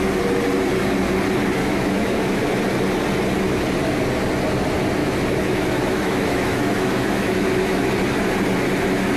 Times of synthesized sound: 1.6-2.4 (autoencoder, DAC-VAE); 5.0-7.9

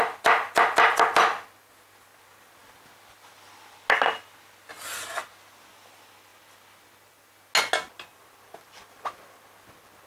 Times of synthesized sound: none

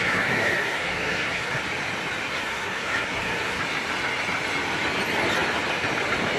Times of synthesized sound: 0.0-1.6 (codec, SNAC); 2.3-3.6

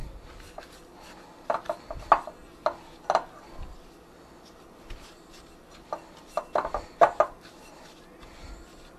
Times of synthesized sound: none